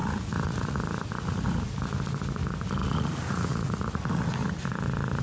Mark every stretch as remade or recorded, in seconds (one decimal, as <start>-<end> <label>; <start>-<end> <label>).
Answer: 0.0-0.8 remade; 0.8-2.8 recorded; 2.8-4.3 remade; 4.3-5.2 recorded